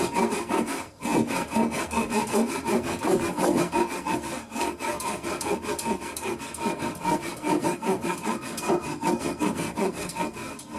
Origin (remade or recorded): remade